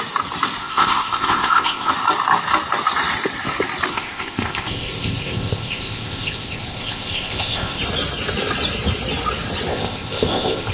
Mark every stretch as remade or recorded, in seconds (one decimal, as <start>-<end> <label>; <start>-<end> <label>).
0.0-0.6 recorded; 0.6-1.9 remade; 1.9-3.9 recorded; 3.9-7.8 remade; 7.8-9.7 recorded; 9.7-10.7 remade